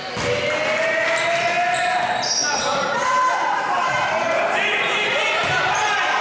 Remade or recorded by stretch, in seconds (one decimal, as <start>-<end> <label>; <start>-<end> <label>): 0.0-2.4 recorded; 2.4-6.2 remade

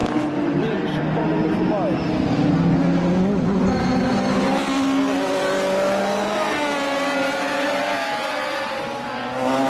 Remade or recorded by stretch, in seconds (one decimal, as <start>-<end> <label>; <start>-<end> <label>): 0.0-9.7 recorded

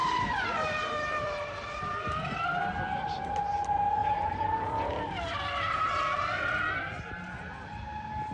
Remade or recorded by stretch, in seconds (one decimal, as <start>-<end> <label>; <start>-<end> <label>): 0.0-2.6 remade; 2.6-4.0 recorded; 4.0-4.9 remade; 4.9-8.3 recorded

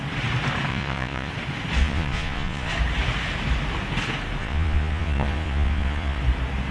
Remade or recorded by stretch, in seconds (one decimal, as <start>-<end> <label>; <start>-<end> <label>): 0.0-0.7 recorded; 0.7-1.3 remade; 1.3-1.8 recorded; 1.8-2.7 remade; 2.7-4.4 recorded; 4.4-6.2 remade; 6.2-6.7 recorded

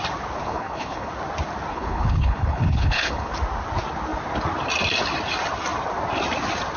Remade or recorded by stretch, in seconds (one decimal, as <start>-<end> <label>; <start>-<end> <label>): 0.0-0.4 recorded; 0.4-1.1 remade; 1.1-1.7 recorded; 1.7-3.3 remade; 3.3-6.8 recorded

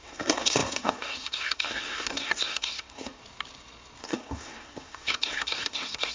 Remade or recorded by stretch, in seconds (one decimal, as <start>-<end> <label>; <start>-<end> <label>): 0.0-3.2 remade; 3.2-4.0 recorded; 4.0-6.1 remade